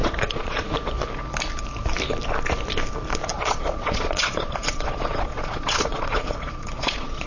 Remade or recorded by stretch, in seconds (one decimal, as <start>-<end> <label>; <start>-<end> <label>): 0.0-0.7 remade; 0.7-3.3 recorded; 3.3-7.3 remade